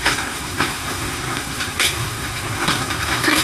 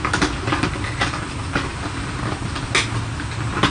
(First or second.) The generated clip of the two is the first